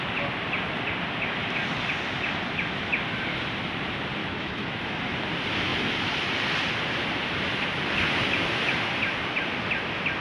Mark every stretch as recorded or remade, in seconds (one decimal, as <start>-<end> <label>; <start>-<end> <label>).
0.0-4.2 recorded; 4.2-4.9 remade; 4.9-10.2 recorded